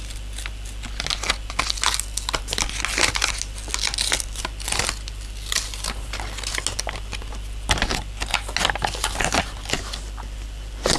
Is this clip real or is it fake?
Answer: real